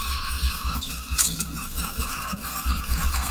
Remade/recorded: remade